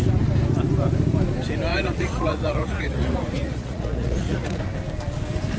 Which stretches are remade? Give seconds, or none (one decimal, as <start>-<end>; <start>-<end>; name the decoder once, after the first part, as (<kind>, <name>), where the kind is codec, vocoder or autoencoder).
1.7-4.6 (vocoder, Vocos)